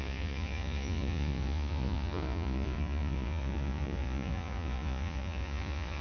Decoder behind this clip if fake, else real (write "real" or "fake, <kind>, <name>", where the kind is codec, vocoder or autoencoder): fake, vocoder, Vocos